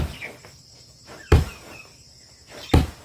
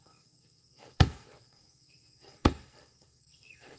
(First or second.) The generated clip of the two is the second